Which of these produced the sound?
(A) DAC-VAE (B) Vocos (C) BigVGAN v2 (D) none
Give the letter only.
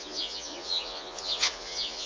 B